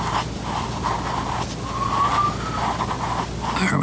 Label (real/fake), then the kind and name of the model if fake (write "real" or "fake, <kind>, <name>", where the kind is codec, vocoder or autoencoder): real